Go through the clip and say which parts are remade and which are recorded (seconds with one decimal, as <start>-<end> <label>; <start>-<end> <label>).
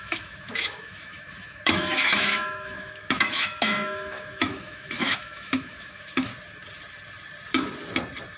0.0-6.3 remade; 6.3-8.4 recorded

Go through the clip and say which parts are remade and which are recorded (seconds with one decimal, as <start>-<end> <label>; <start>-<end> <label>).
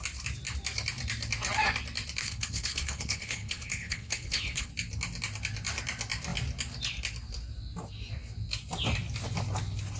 0.0-2.2 recorded; 2.2-4.7 remade; 4.7-10.0 recorded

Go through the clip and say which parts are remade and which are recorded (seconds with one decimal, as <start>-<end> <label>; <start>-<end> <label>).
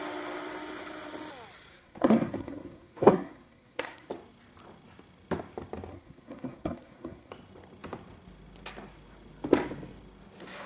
0.0-1.7 recorded; 1.7-4.1 remade; 4.1-5.9 recorded; 5.9-7.3 remade; 7.3-10.7 recorded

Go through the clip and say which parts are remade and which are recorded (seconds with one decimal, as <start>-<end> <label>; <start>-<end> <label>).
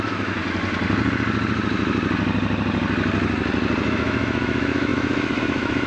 0.0-0.4 remade; 0.4-3.9 recorded; 3.9-5.9 remade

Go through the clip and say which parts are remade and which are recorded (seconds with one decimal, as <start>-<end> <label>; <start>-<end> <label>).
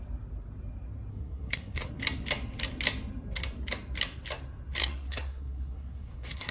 0.0-1.1 recorded; 1.1-1.9 remade; 1.9-4.8 recorded; 4.8-6.5 remade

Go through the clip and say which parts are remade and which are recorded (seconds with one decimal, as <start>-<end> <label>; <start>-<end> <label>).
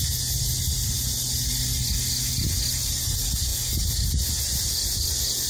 0.0-5.5 recorded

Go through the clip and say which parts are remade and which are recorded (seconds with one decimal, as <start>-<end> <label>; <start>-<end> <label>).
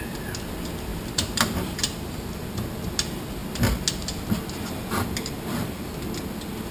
0.0-0.9 recorded; 0.9-2.1 remade; 2.1-6.7 recorded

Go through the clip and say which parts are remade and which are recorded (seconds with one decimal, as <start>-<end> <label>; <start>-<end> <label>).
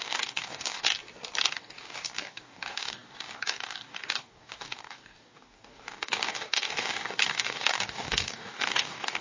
0.0-0.9 remade; 0.9-1.4 recorded; 1.4-9.2 remade